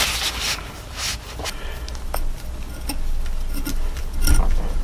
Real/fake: real